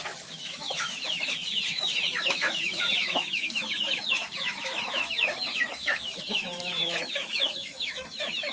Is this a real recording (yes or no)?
no